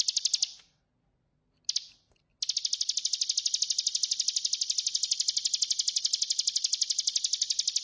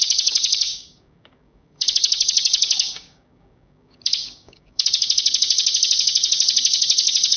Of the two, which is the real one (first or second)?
first